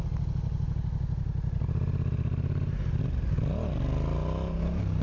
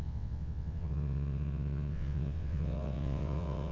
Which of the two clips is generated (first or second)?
second